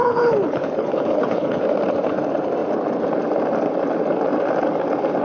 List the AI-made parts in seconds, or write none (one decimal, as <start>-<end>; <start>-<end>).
0.0-1.6